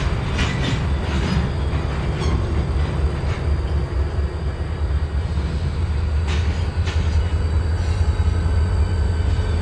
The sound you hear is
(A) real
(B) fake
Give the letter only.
A